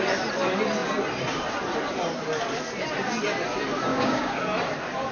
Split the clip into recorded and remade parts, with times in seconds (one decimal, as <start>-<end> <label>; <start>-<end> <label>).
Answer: 0.0-3.9 recorded; 3.9-4.4 remade; 4.4-5.1 recorded